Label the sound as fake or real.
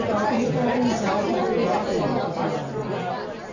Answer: real